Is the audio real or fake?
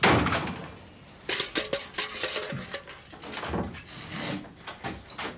real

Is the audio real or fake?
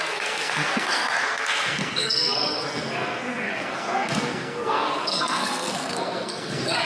fake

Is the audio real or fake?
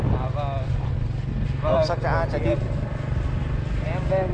real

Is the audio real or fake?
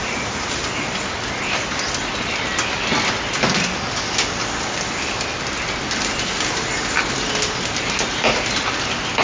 real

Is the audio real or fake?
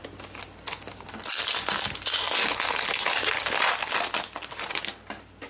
real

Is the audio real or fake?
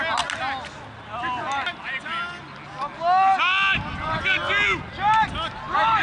real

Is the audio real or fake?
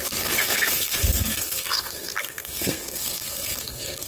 fake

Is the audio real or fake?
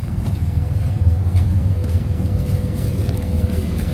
fake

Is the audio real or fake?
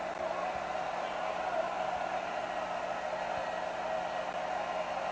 real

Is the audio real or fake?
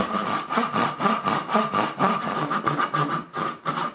real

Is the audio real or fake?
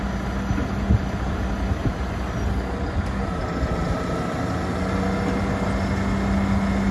real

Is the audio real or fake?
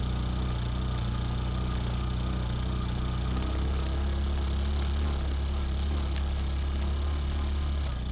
real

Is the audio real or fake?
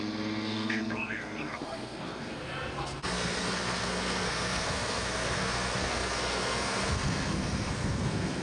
fake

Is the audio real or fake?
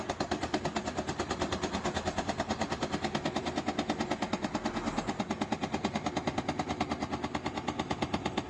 real